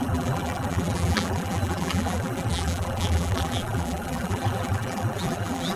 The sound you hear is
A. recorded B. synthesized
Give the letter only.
B